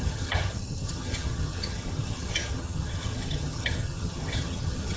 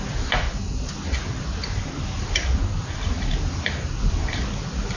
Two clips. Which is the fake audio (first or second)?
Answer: first